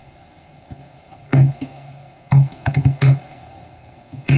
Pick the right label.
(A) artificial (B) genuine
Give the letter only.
A